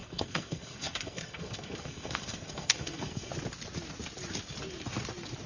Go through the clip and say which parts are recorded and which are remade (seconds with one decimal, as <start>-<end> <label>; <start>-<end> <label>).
0.0-3.3 remade; 3.3-5.5 recorded